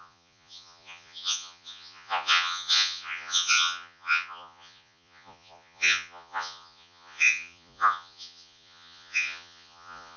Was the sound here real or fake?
fake